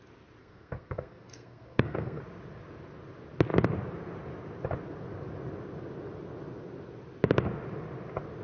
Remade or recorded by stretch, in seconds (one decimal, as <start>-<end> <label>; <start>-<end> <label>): 0.0-0.4 recorded; 0.4-2.2 remade; 2.2-8.4 recorded